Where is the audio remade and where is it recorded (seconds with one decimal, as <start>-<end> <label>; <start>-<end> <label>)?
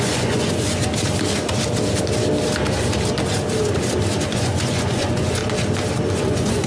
0.0-0.8 remade; 0.8-4.2 recorded; 4.2-5.4 remade; 5.4-6.1 recorded; 6.1-6.7 remade